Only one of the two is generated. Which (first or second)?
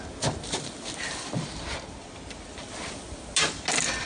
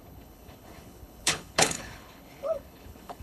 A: second